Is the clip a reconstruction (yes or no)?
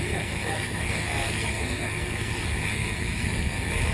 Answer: yes